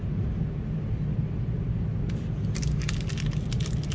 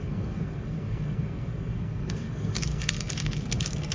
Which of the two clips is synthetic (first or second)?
second